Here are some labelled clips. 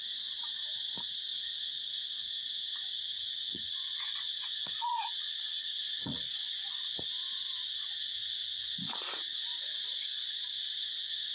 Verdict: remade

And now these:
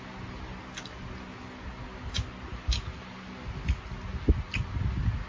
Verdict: recorded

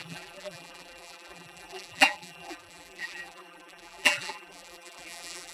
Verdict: remade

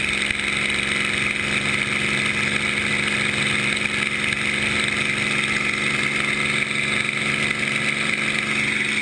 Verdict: recorded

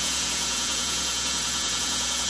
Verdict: remade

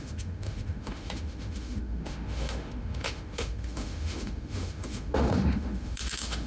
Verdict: remade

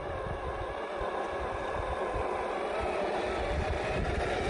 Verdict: recorded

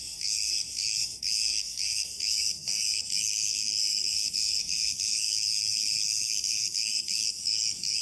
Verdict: remade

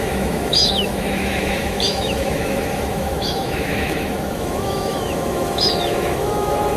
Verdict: remade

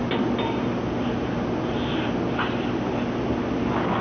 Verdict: recorded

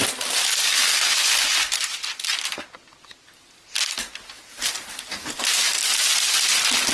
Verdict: recorded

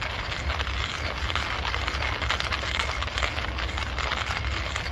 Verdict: recorded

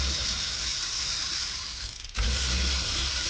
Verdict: recorded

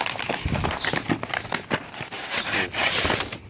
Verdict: recorded